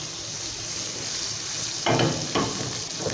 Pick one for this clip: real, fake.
real